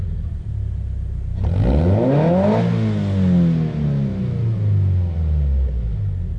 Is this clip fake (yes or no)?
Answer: no